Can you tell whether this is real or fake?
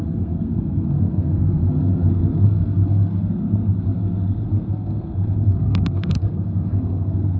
fake